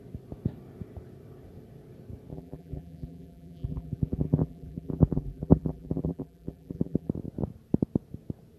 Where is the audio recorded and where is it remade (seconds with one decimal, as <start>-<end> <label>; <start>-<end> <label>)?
0.0-2.3 recorded; 2.3-7.1 remade; 7.1-8.6 recorded